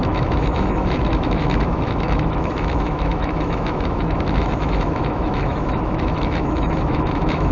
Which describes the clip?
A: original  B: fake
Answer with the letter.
B